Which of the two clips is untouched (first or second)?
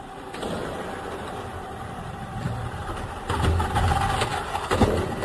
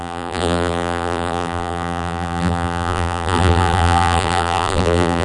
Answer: first